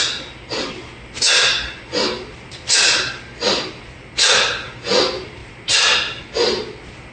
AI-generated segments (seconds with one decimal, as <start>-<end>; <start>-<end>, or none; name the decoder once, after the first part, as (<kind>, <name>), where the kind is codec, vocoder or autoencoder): none